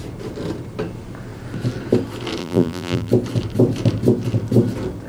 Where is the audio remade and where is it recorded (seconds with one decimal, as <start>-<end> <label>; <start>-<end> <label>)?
0.0-2.4 recorded; 2.4-3.1 remade; 3.1-5.1 recorded